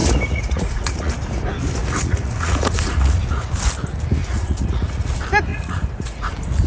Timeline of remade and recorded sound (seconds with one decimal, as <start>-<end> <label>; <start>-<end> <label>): 0.0-1.1 remade; 1.1-1.8 recorded; 1.8-3.5 remade; 3.5-4.2 recorded; 4.2-5.1 remade; 5.1-5.5 recorded; 5.5-6.3 remade; 6.3-6.7 recorded